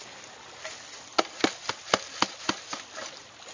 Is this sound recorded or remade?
recorded